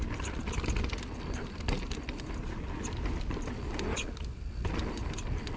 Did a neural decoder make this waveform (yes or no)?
no